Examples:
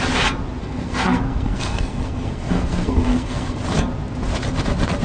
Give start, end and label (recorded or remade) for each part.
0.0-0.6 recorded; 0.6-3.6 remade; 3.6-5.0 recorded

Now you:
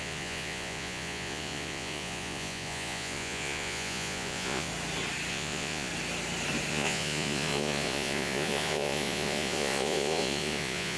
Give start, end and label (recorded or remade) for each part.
0.0-4.7 remade; 4.7-5.3 recorded; 5.3-5.9 remade; 5.9-6.7 recorded; 6.7-11.0 remade

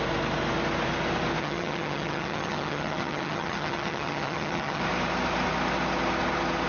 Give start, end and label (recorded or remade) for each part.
0.0-1.4 recorded; 1.4-4.8 remade; 4.8-6.7 recorded